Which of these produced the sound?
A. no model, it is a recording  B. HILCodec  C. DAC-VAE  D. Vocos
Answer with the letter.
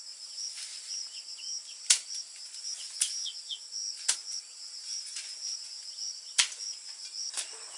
A